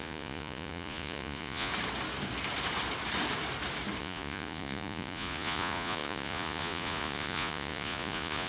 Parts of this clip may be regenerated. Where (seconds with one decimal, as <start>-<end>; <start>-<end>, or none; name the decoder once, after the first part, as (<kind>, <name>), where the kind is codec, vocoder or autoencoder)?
0.0-1.7 (vocoder, Vocos); 4.0-8.5